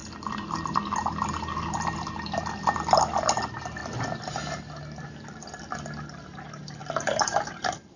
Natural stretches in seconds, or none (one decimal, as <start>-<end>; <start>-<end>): 3.8-4.8; 6.8-7.6